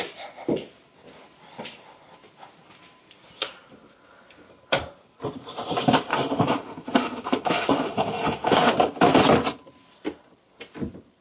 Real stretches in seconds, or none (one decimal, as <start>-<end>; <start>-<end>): 0.0-6.1; 8.7-11.2